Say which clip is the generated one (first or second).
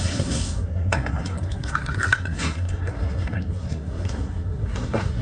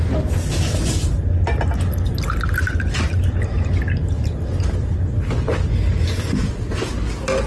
first